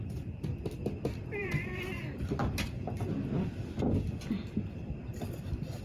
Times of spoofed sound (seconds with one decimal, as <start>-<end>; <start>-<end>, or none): 1.4-2.0; 2.4-3.7; 5.0-5.8